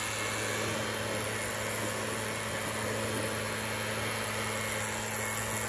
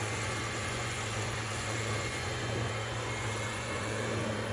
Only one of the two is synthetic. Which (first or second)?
second